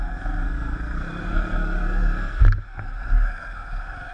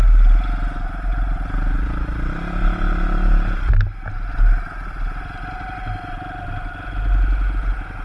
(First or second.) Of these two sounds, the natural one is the second